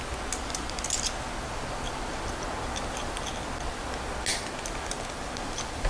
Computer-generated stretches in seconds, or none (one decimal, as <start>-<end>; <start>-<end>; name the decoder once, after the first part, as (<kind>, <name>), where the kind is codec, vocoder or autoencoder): none